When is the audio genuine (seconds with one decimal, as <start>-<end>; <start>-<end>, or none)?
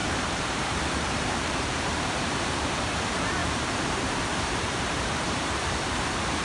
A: none